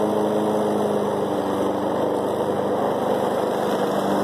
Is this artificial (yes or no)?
no